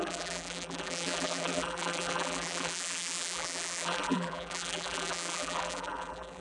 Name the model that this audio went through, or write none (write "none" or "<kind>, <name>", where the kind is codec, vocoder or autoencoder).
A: vocoder, BigVGAN v2